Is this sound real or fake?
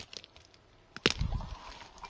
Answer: real